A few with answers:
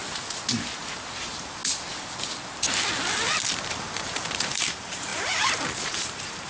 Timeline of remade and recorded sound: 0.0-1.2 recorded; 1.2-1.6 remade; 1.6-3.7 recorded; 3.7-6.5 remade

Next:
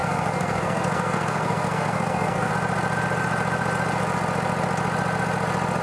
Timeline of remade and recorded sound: 0.0-2.5 remade; 2.5-5.8 recorded

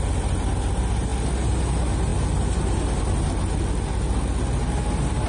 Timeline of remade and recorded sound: 0.0-5.3 recorded

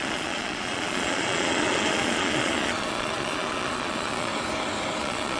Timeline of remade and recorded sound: 0.0-4.3 remade; 4.3-5.0 recorded; 5.0-5.4 remade

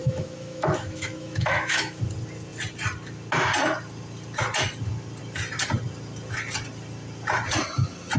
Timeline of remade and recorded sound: 0.0-2.0 remade; 2.0-8.2 recorded